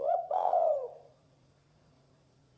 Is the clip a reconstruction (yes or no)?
yes